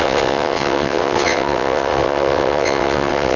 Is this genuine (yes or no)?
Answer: no